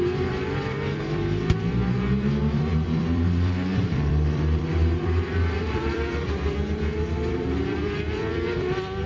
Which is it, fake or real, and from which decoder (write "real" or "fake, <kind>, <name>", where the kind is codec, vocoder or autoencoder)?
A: fake, vocoder, BigVGAN v2